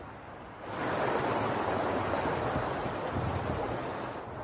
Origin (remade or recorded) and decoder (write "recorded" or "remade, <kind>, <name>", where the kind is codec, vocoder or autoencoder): recorded